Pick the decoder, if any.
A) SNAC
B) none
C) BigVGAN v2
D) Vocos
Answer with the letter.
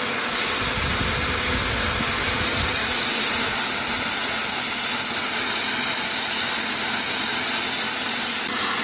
B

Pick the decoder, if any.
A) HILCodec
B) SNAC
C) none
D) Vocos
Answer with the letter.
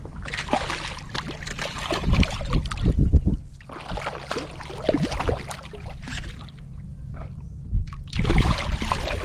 C